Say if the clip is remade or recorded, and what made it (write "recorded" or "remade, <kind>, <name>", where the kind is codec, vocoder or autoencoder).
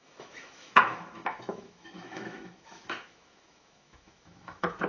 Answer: remade, autoencoder, DAC-VAE